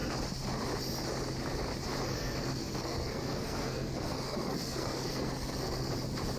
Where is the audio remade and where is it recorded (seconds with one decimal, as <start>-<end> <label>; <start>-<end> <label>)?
0.0-2.1 recorded; 2.1-5.9 remade; 5.9-6.4 recorded